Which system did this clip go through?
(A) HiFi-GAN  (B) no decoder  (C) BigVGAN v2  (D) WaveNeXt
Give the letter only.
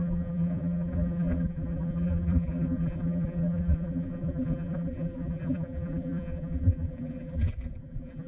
C